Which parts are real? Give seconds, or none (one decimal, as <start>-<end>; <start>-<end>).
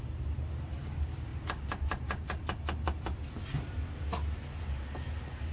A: 0.0-5.5